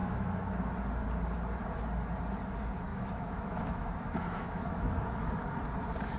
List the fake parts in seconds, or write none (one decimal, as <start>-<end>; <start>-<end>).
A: 0.0-0.5; 2.9-5.3